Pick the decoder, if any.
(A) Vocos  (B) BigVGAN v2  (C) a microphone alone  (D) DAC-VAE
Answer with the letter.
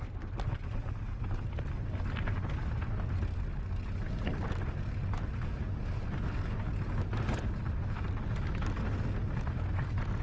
C